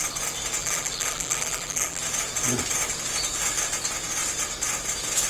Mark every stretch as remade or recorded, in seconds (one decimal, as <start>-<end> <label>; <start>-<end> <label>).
0.0-0.6 recorded; 0.6-2.0 remade; 2.0-5.3 recorded